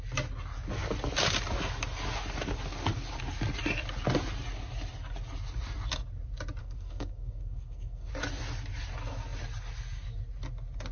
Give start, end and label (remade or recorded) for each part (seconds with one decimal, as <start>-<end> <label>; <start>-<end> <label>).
0.0-6.6 recorded; 6.6-8.1 remade; 8.1-10.9 recorded